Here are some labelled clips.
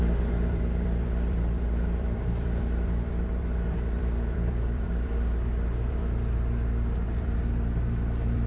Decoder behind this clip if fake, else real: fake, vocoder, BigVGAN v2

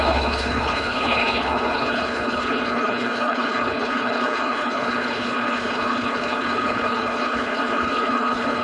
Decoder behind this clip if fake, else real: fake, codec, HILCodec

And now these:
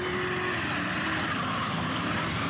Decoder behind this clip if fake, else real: real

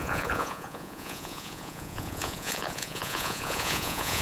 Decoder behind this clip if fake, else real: fake, vocoder, Vocos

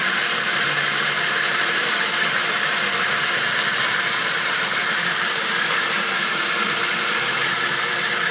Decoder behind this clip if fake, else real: fake, vocoder, BigVGAN v2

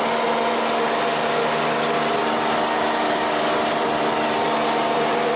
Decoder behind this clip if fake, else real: real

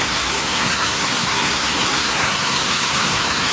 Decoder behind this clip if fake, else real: fake, codec, SNAC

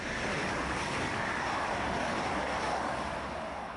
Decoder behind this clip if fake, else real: fake, codec, DAC